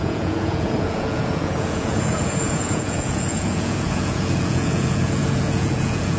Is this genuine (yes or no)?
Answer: no